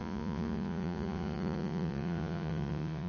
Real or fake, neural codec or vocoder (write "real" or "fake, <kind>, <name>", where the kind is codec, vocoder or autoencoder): fake, vocoder, Vocos